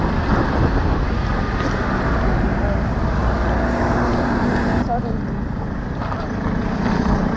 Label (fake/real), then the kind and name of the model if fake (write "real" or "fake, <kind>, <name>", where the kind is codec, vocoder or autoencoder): real